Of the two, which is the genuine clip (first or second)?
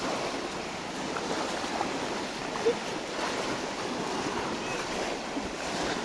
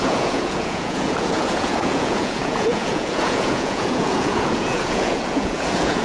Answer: first